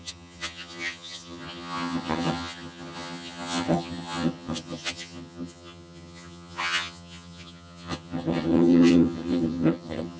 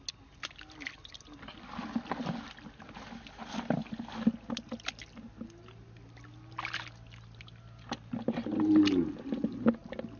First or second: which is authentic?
second